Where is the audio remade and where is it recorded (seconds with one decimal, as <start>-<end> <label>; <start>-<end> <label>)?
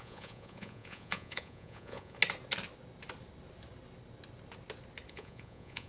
0.0-2.2 remade; 2.2-5.1 recorded; 5.1-5.9 remade